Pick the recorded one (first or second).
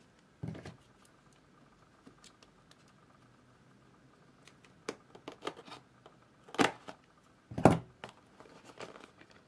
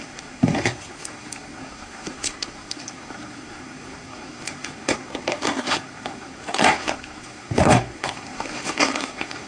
first